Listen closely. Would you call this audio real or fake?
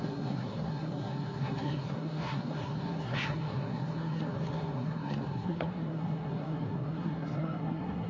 fake